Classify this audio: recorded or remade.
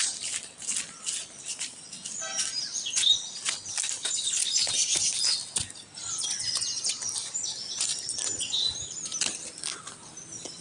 recorded